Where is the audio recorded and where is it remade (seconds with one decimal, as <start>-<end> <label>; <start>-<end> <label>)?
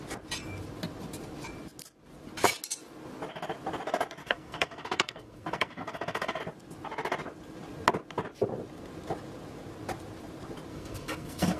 0.0-4.2 recorded; 4.2-6.4 remade; 6.4-10.7 recorded; 10.7-11.6 remade